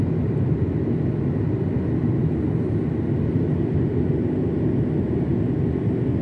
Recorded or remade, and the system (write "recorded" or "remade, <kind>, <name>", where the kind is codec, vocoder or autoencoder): recorded